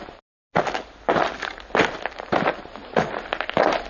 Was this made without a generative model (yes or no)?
yes